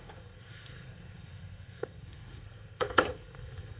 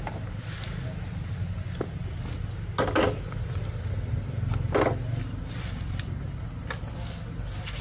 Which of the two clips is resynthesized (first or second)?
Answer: first